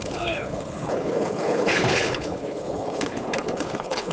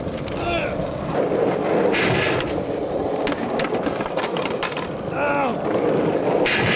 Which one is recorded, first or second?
second